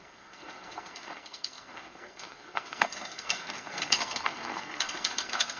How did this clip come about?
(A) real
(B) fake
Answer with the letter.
B